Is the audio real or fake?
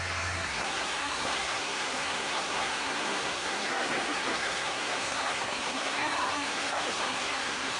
fake